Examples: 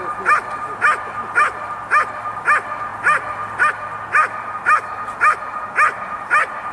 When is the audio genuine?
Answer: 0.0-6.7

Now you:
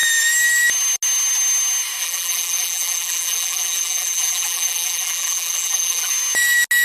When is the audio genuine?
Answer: 0.0-2.0; 6.1-6.8

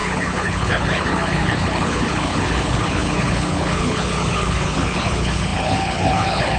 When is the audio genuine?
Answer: none